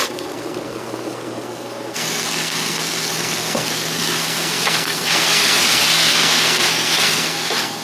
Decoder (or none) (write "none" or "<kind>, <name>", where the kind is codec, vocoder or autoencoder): codec, SNAC